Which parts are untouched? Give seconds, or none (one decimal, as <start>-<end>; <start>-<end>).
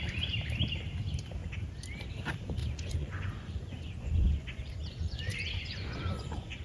0.0-2.6